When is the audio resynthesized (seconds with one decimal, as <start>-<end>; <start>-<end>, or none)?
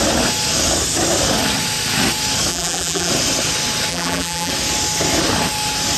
2.5-3.1; 3.9-4.5